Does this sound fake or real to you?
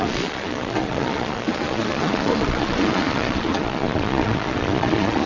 fake